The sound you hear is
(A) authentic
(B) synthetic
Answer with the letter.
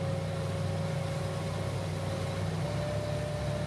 A